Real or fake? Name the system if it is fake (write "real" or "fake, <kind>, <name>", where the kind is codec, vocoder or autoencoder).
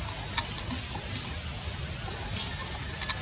real